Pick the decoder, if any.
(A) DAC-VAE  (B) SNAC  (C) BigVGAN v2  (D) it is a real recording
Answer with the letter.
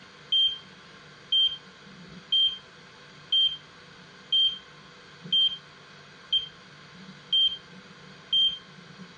D